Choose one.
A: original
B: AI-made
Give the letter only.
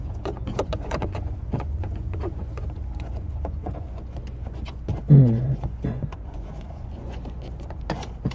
B